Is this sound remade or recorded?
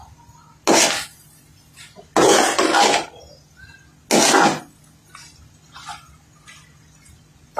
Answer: recorded